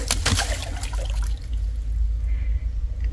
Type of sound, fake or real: real